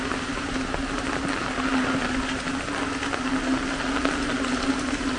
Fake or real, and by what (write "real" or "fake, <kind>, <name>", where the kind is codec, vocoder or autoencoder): real